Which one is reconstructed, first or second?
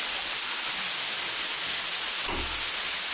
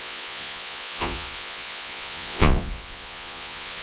second